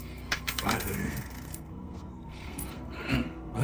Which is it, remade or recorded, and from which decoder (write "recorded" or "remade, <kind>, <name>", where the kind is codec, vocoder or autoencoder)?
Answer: remade, codec, SNAC